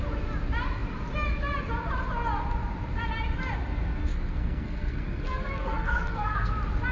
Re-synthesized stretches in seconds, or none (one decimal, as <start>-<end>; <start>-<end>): 4.1-6.5